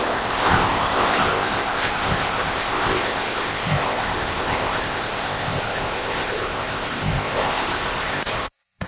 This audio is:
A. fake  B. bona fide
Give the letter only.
A